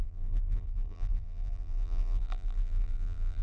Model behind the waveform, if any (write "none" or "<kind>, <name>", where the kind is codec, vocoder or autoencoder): vocoder, BigVGAN v2